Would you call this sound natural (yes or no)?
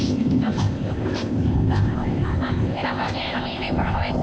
no